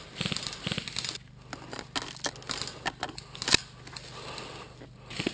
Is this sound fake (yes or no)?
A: no